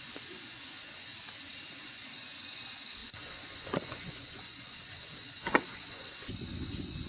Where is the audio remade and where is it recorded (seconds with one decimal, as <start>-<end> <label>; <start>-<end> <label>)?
0.0-1.1 remade; 1.1-1.7 recorded; 1.7-7.1 remade